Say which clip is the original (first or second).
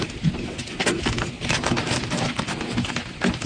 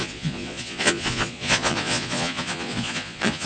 first